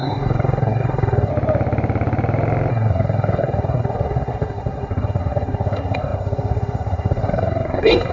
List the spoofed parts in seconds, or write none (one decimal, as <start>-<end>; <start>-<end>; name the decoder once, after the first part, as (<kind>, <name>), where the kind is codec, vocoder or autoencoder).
0.0-1.3 (codec, SNAC); 2.7-8.1